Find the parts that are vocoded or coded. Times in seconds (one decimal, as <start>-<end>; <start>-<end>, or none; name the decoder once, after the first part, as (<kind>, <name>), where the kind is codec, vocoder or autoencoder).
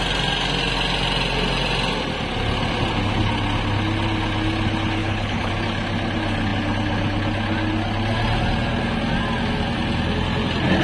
5.0-5.5 (codec, HILCodec)